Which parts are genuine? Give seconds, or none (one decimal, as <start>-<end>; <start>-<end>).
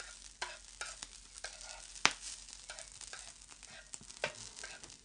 0.0-5.0